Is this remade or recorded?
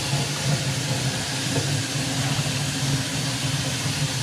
recorded